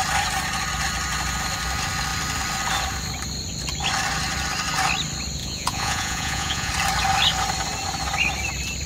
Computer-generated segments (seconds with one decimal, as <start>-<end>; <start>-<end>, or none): 5.4-6.7

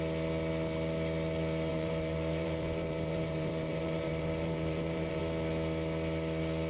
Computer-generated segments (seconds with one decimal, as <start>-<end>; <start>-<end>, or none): 1.7-5.2

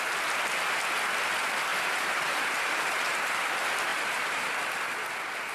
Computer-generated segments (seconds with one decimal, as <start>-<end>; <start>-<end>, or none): 1.7-3.5; 3.9-4.6

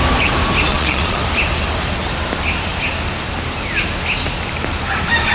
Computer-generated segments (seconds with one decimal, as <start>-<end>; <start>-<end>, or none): 0.7-1.2

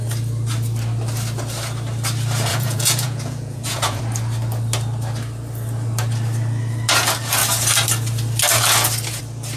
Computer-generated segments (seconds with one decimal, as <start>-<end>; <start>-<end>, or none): 2.5-4.0

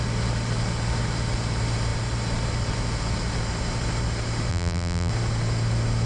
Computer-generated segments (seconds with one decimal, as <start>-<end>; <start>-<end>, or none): 4.5-5.1